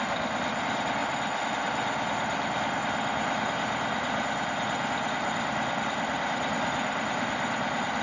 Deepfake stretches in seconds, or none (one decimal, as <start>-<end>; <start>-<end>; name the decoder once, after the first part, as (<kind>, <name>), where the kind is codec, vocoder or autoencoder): none